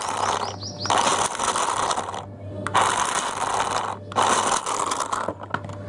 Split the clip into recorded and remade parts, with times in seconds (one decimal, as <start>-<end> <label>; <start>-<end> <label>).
0.0-5.9 recorded